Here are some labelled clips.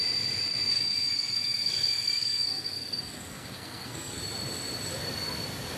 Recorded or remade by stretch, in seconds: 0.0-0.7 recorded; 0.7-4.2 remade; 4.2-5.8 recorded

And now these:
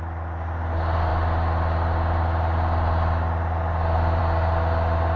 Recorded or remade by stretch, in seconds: 0.0-5.2 recorded

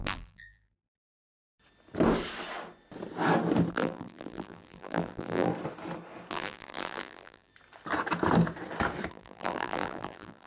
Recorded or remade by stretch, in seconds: 0.0-1.4 remade; 1.4-3.7 recorded; 3.7-5.5 remade; 5.5-6.3 recorded; 6.3-7.5 remade; 7.5-9.1 recorded; 9.1-10.5 remade

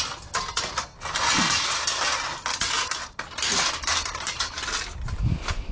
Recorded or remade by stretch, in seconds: 0.0-5.7 recorded